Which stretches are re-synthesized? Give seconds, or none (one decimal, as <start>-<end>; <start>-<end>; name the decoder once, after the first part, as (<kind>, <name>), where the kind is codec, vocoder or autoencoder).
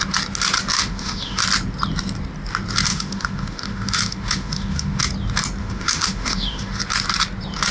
0.7-1.4 (autoencoder, DAC-VAE); 2.9-5.0; 5.6-6.8